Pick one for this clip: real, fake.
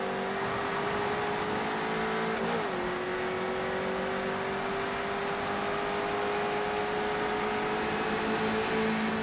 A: real